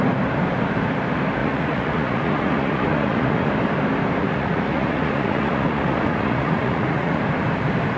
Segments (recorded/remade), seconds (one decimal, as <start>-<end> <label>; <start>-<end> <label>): 0.0-1.4 recorded; 1.4-3.5 remade; 3.5-4.2 recorded; 4.2-7.2 remade; 7.2-8.0 recorded